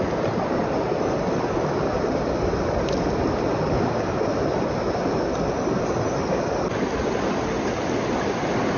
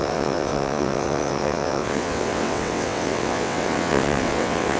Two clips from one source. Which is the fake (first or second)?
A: second